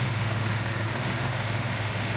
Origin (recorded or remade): remade